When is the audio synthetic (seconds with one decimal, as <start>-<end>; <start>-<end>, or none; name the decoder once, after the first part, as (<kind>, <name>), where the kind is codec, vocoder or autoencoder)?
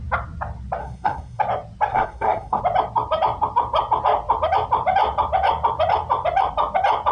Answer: 0.8-1.4 (codec, SNAC); 1.9-2.6